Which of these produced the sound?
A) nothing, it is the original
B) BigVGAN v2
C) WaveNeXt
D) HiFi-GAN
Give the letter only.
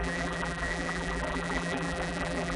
B